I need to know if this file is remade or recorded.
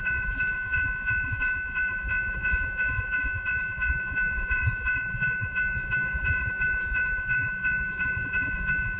remade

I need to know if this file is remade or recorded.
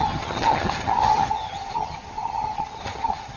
remade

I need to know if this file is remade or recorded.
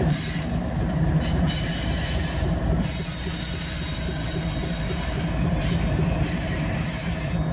remade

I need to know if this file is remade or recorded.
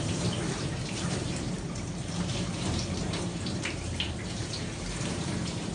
remade